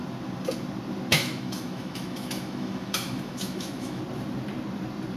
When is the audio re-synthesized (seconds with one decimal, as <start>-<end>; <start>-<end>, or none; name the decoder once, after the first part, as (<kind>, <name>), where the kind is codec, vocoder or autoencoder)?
1.1-4.0 (autoencoder, DAC-VAE)